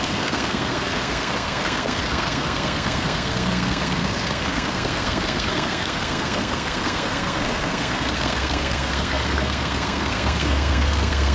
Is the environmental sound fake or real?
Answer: fake